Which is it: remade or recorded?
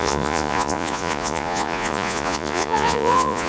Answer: remade